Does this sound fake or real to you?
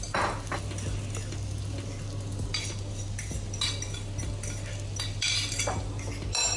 real